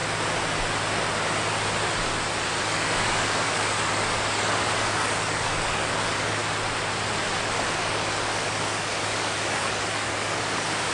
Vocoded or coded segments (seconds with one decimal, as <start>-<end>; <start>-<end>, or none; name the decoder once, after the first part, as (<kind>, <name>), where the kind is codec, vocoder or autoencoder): 2.6-6.4 (codec, DAC); 7.8-10.9